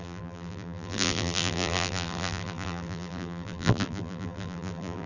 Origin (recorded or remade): remade